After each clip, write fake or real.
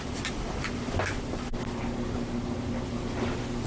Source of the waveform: real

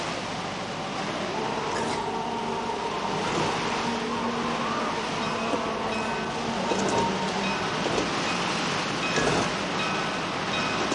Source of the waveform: real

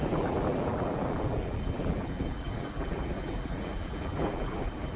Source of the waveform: fake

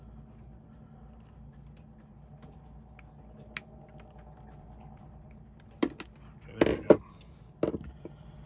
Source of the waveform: real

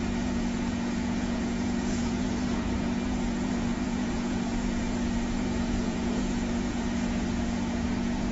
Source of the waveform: fake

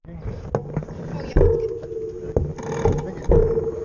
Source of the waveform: real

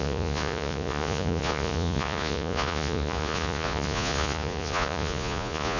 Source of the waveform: fake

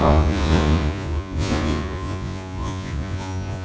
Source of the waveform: fake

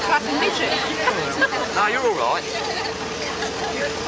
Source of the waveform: real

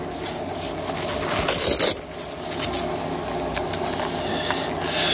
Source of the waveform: real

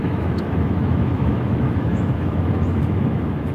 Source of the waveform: fake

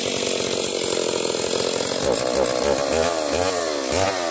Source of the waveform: real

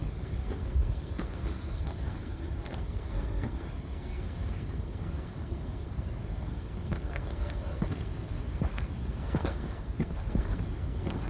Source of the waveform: fake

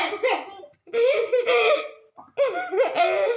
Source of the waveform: real